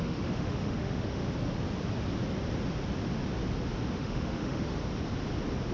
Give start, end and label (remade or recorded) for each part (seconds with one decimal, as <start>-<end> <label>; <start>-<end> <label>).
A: 0.0-1.2 remade; 1.2-4.0 recorded; 4.0-4.8 remade; 4.8-5.7 recorded